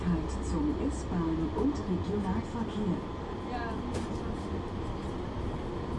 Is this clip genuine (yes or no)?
yes